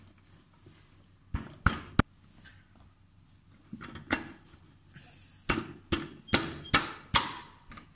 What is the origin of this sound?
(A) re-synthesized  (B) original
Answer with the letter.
B